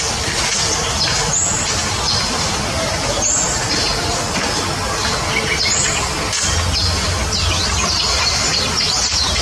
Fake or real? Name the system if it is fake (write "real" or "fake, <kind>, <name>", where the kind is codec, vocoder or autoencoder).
real